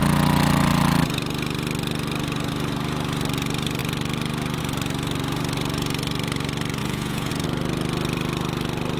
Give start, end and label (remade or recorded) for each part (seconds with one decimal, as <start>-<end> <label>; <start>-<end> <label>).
0.0-6.8 recorded; 6.8-7.3 remade; 7.3-9.0 recorded